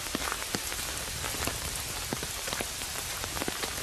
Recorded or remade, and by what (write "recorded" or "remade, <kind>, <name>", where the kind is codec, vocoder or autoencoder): remade, vocoder, BigVGAN v2